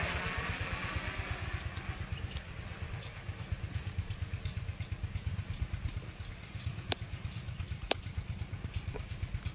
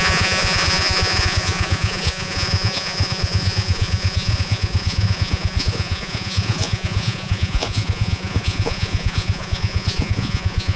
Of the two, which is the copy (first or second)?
second